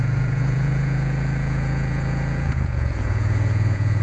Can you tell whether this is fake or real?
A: fake